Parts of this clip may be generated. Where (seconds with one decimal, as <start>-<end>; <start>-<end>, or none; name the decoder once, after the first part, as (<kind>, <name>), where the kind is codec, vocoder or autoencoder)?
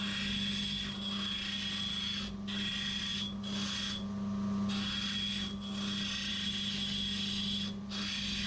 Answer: none